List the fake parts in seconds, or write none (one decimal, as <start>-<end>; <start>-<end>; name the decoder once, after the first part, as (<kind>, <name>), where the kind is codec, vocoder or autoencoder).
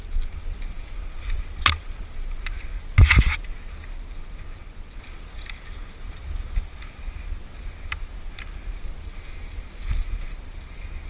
none